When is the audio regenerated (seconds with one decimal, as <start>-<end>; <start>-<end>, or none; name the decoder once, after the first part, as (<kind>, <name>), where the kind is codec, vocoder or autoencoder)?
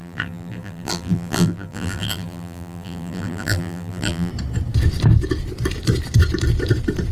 0.0-4.3 (vocoder, BigVGAN v2)